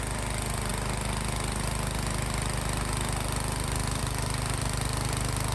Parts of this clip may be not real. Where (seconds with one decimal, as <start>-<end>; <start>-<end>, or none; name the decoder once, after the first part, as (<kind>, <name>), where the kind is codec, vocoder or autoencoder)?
none